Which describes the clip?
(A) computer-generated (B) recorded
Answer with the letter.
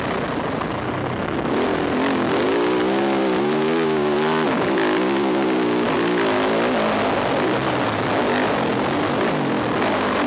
B